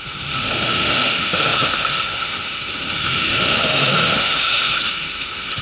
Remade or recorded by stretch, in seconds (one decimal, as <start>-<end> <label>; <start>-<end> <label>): 0.0-5.6 remade